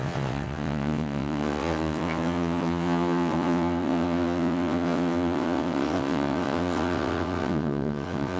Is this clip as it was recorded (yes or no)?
no